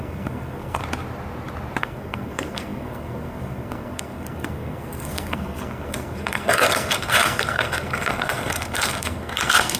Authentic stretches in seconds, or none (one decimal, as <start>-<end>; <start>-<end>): 0.8-1.8